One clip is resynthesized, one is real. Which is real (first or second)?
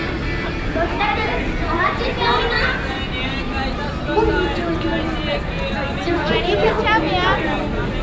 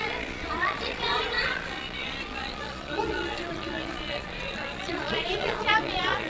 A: first